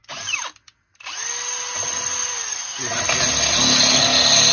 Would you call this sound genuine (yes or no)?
yes